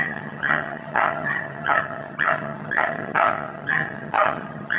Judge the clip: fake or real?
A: fake